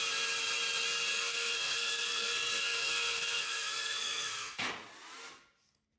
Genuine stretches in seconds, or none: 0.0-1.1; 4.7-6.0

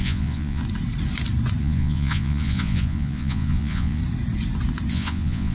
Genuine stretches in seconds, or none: 0.6-1.6; 4.0-4.9

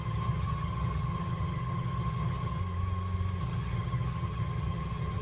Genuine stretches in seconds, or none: 2.6-3.4